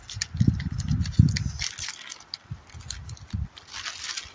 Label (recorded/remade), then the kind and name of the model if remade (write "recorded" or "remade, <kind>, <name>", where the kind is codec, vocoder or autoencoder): recorded